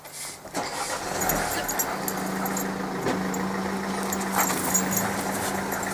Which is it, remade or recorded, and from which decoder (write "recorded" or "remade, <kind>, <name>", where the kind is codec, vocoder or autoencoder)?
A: recorded